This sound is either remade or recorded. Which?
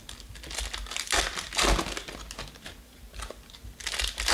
recorded